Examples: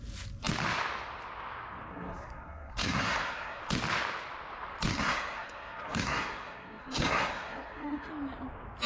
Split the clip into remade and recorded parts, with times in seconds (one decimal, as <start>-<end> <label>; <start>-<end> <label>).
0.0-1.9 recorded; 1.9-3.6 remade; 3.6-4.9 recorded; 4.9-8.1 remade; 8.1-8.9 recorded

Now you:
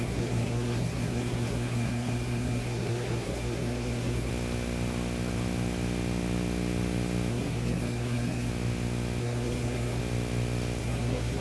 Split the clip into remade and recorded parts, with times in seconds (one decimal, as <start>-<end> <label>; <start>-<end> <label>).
0.0-4.3 remade; 4.3-7.3 recorded; 7.3-8.5 remade; 8.5-9.2 recorded; 9.2-10.0 remade; 10.0-10.8 recorded; 10.8-11.4 remade

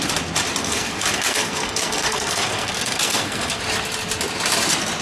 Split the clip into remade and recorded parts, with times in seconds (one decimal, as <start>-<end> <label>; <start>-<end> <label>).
0.0-0.6 recorded; 0.6-3.6 remade; 3.6-5.0 recorded